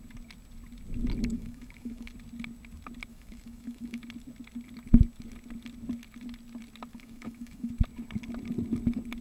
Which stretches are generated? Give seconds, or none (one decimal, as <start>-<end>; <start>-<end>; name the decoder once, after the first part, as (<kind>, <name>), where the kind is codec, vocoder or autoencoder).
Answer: 1.3-2.1 (autoencoder, DAC-VAE); 3.1-4.0; 6.9-7.7